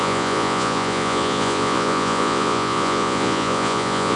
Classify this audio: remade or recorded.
remade